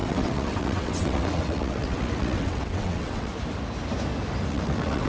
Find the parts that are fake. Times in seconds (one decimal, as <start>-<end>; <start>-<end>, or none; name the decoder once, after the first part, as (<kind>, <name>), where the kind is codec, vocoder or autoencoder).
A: 0.0-3.3 (vocoder, WaveNeXt); 4.5-5.1